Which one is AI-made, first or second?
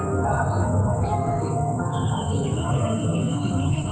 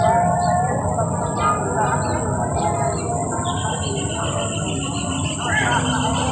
first